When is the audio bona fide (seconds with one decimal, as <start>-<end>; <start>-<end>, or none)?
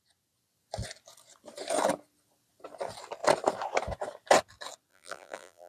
0.0-4.9